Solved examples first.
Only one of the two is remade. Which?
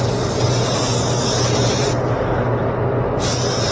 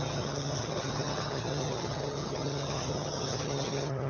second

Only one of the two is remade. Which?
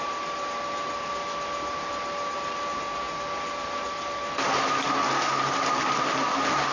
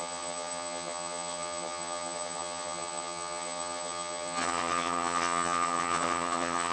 second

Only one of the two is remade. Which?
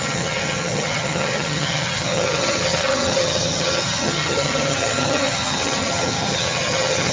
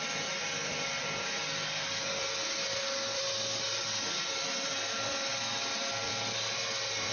first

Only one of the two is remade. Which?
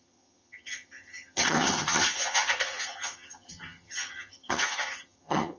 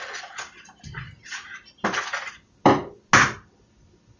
first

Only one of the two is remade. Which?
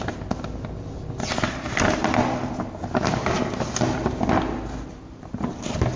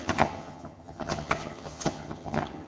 second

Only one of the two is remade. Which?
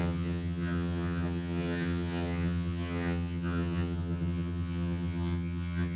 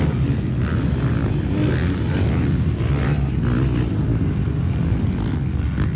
first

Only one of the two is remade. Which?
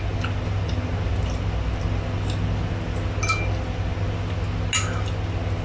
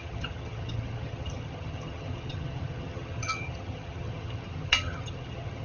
second